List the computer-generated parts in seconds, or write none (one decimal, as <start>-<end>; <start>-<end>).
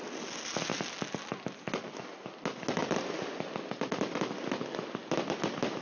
none